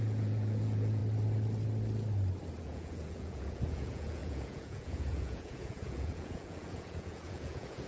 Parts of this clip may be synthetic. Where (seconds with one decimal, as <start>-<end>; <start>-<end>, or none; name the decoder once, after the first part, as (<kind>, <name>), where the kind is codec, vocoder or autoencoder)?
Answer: 0.0-1.0 (vocoder, Vocos); 2.6-7.9